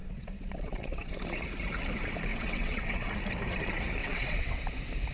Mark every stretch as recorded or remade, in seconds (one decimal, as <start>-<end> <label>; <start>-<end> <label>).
0.0-1.1 remade; 1.1-2.3 recorded; 2.3-3.1 remade; 3.1-4.0 recorded; 4.0-4.6 remade; 4.6-5.1 recorded